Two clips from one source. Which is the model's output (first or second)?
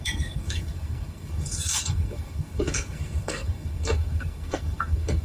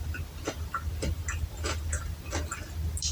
first